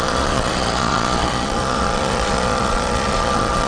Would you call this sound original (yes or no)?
no